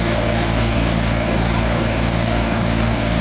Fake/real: fake